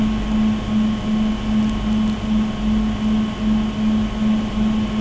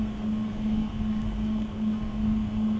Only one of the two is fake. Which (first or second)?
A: second